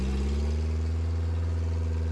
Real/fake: real